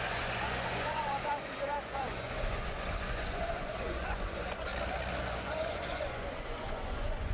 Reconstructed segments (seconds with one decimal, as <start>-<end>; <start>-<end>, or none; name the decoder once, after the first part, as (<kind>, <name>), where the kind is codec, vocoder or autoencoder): 0.0-4.7 (vocoder, Vocos); 5.2-7.3